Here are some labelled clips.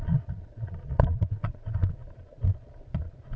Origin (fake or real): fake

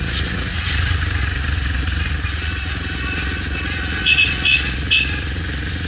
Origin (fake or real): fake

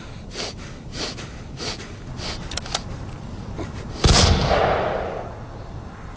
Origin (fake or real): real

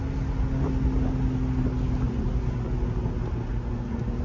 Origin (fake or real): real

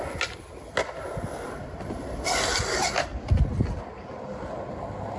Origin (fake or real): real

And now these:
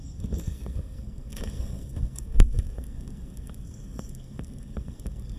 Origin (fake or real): fake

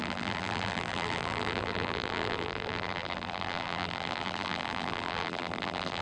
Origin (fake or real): fake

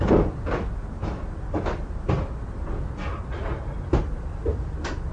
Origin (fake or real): real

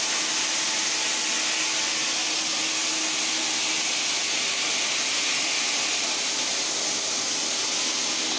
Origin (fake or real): real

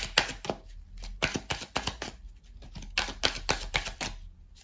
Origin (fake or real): real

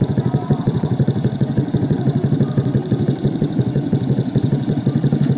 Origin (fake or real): fake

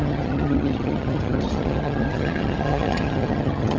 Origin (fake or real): fake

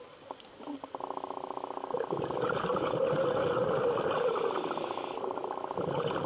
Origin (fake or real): real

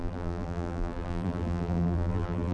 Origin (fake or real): fake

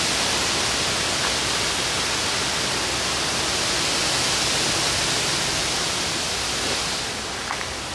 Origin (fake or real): real